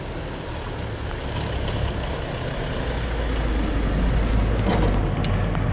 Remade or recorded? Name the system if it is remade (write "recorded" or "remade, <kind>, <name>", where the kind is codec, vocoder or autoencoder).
recorded